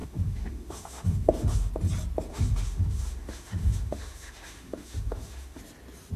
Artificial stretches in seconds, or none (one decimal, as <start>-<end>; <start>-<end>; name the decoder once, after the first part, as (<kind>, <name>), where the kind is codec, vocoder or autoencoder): 0.0-1.7 (autoencoder, DAC-VAE); 2.3-5.6